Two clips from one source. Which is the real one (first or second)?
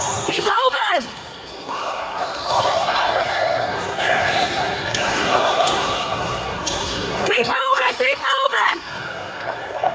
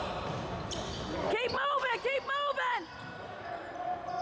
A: second